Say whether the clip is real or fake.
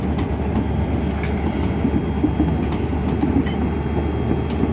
real